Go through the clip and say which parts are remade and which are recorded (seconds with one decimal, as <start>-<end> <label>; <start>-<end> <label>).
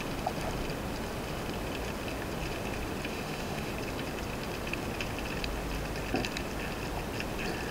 0.0-3.1 recorded; 3.1-3.7 remade; 3.7-7.7 recorded